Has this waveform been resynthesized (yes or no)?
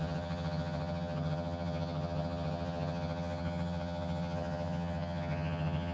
yes